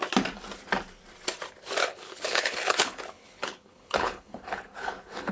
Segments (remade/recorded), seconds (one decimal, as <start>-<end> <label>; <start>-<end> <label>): 0.0-1.8 recorded; 1.8-5.3 remade